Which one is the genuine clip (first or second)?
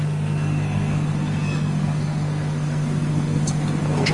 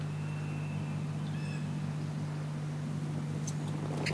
second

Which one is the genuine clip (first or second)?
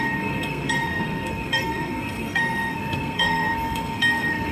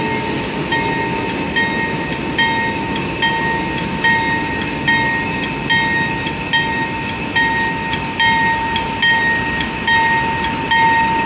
second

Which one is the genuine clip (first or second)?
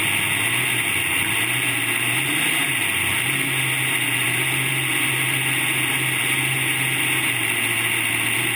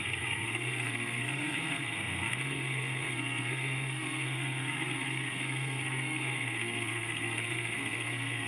first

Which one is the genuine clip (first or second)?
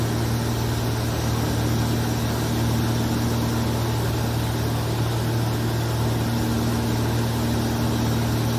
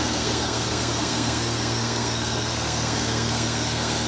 first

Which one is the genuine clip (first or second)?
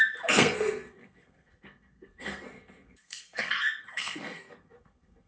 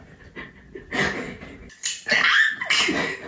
second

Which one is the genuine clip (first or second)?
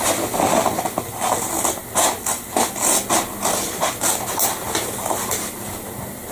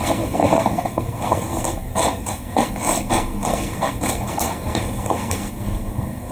first